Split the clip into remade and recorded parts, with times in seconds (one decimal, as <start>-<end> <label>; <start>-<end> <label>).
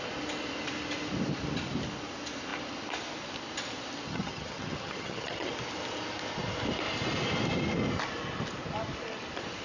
0.0-4.1 recorded; 4.1-5.5 remade; 5.5-9.6 recorded